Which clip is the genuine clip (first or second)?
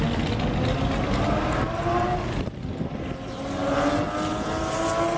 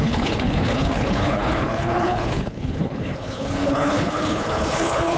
first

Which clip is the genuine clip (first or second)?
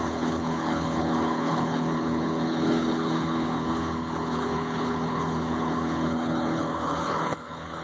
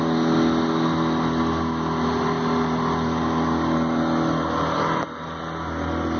second